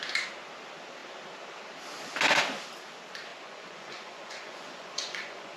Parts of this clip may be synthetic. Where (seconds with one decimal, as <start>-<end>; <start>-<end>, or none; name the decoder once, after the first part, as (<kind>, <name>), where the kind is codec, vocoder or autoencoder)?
3.3-5.6 (vocoder, Vocos)